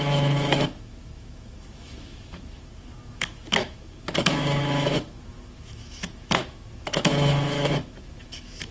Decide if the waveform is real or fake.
fake